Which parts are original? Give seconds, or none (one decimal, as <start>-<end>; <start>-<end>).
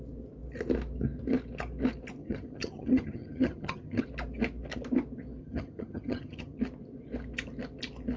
0.0-2.2; 4.0-5.4; 6.6-8.2